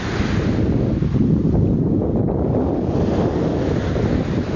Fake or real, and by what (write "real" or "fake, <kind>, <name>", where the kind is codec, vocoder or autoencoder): real